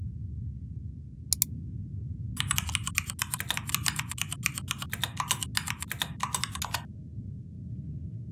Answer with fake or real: real